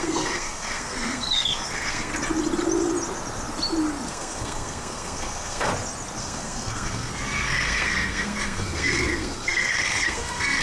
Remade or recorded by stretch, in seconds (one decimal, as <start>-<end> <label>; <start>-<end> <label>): 0.0-2.1 remade; 2.1-4.1 recorded; 4.1-5.7 remade; 5.7-6.2 recorded; 6.2-10.6 remade